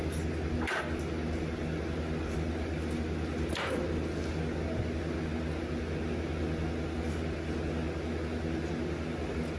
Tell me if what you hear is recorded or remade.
recorded